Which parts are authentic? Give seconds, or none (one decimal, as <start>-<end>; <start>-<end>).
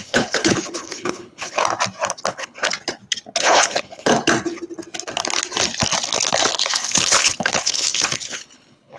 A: 1.6-2.3; 2.7-3.4; 4.1-6.7